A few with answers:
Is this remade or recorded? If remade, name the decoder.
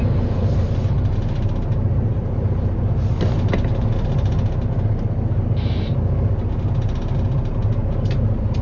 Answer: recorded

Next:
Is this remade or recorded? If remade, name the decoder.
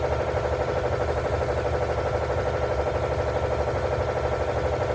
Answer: recorded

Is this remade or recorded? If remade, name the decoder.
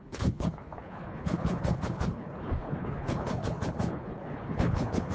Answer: remade, codec, HILCodec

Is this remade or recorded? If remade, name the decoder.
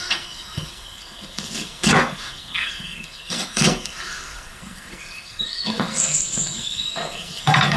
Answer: remade, codec, SNAC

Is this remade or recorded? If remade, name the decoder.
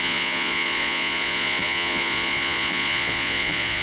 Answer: remade, vocoder, Vocos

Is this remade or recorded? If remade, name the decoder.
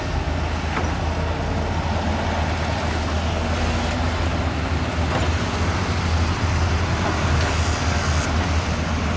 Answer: recorded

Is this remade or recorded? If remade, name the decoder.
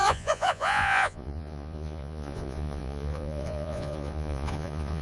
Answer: remade, vocoder, Vocos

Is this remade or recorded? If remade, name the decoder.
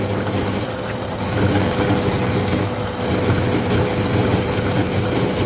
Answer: recorded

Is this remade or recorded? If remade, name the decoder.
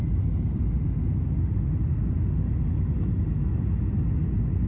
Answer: recorded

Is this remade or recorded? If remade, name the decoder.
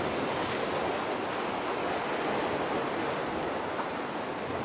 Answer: recorded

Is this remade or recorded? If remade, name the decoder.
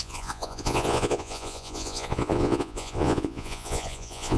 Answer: remade, vocoder, Vocos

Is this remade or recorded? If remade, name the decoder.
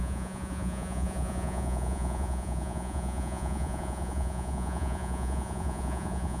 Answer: remade, vocoder, Vocos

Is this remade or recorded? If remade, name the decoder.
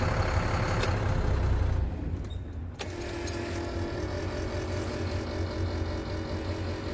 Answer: recorded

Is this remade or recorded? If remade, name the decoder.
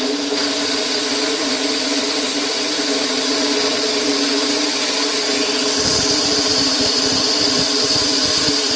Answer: remade, vocoder, BigVGAN v2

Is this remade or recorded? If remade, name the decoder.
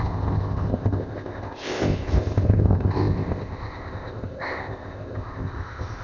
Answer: remade, codec, ZipCodec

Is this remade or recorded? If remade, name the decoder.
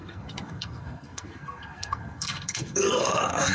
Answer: remade, codec, SNAC